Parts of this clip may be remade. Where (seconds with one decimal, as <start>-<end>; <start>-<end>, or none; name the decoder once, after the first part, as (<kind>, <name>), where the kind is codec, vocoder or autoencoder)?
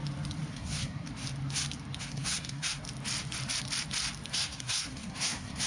0.5-1.1 (codec, SNAC); 2.0-2.8; 4.3-5.7